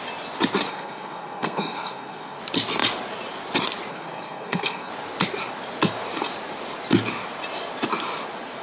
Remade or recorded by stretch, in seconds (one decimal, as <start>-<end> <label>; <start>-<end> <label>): 0.0-0.7 recorded; 0.7-2.4 remade; 2.4-3.9 recorded; 3.9-4.9 remade; 4.9-8.6 recorded